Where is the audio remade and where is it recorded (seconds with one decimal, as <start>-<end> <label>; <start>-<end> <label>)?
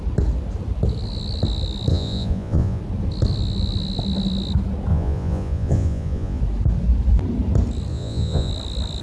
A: 0.0-1.9 recorded; 1.9-2.8 remade; 2.8-4.9 recorded; 4.9-6.4 remade; 6.4-7.9 recorded; 7.9-8.5 remade; 8.5-9.0 recorded